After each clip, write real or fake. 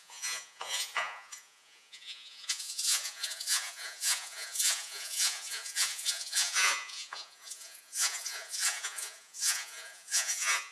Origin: fake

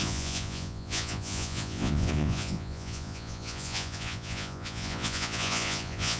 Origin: fake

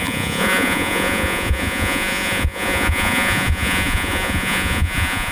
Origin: fake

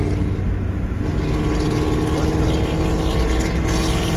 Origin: real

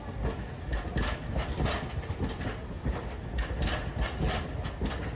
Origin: real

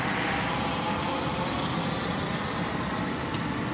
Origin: real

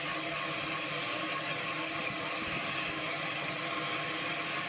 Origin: real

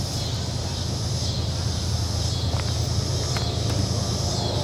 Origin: real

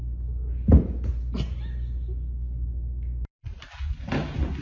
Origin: real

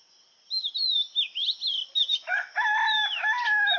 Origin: real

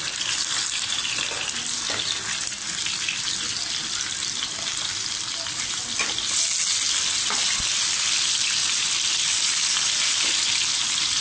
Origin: real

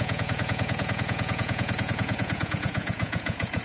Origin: fake